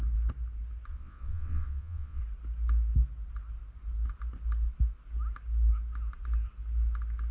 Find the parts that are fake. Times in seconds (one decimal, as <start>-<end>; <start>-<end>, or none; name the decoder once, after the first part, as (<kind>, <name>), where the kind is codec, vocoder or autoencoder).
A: 0.9-2.2 (vocoder, WaveNeXt)